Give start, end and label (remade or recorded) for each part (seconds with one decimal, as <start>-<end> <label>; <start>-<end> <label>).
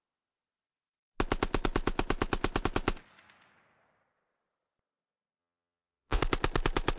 0.0-5.4 recorded; 5.4-6.2 remade; 6.2-7.0 recorded